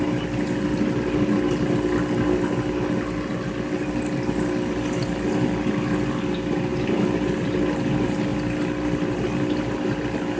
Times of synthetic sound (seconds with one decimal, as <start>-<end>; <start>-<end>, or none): 6.7-7.6; 8.3-9.6